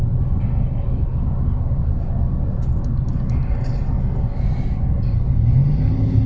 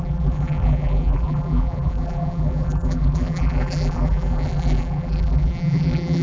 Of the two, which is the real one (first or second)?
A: first